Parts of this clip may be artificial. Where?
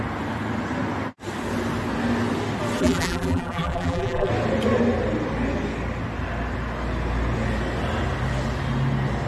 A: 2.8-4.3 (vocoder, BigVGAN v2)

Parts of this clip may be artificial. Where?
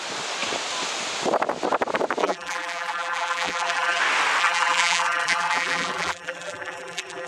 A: 2.2-4.0 (vocoder, BigVGAN v2); 4.4-7.3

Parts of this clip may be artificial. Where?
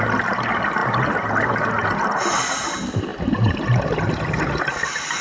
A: 0.8-2.2 (vocoder, BigVGAN v2); 3.1-4.6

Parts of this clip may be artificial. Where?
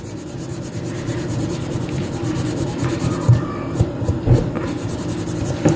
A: 0.0-5.8 (vocoder, BigVGAN v2)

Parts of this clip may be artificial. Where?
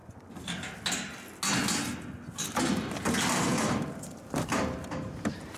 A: 3.5-5.6 (vocoder, BigVGAN v2)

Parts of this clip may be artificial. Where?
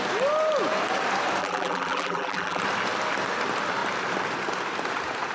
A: 1.4-2.6 (vocoder, BigVGAN v2)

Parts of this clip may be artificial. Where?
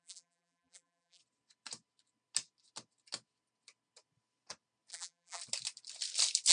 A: 0.0-1.2 (vocoder, BigVGAN v2); 4.9-5.4